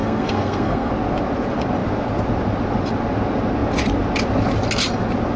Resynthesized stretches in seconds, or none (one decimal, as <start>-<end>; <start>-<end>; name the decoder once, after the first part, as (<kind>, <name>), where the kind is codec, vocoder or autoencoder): 0.0-0.9 (codec, SNAC)